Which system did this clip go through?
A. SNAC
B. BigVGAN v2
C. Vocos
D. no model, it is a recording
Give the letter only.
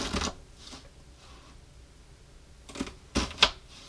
D